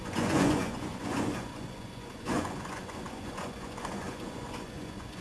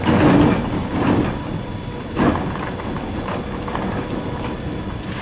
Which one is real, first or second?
second